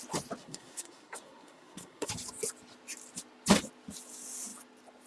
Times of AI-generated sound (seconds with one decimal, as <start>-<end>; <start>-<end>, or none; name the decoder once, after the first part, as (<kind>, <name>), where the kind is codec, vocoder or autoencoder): 0.4-2.1 (codec, SNAC)